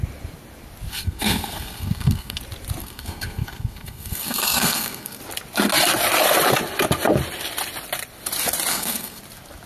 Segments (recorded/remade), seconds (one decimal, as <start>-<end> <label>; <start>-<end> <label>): 0.0-0.9 recorded; 0.9-2.4 remade; 2.4-2.8 recorded; 2.8-5.2 remade; 5.2-8.7 recorded; 8.7-9.2 remade; 9.2-9.7 recorded